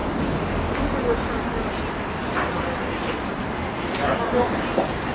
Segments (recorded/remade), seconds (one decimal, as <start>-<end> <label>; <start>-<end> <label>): 0.0-5.1 recorded